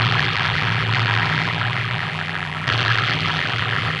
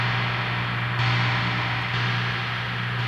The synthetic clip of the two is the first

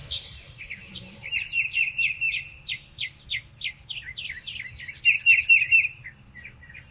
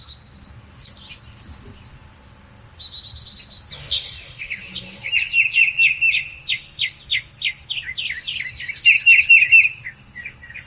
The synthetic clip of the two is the first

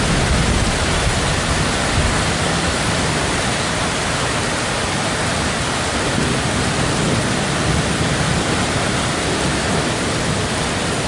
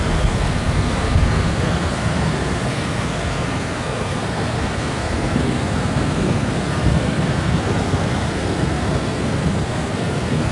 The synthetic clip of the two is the second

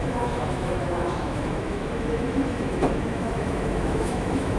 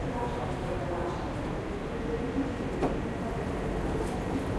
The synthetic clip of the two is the first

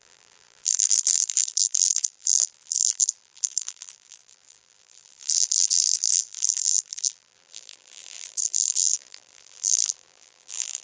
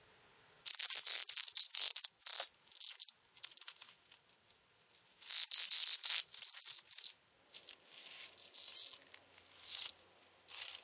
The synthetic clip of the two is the first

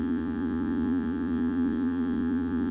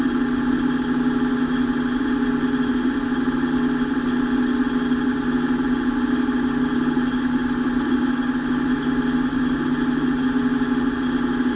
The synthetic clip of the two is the first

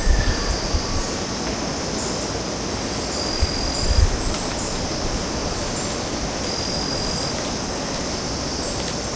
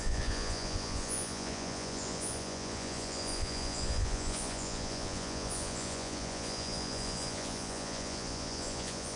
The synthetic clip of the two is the second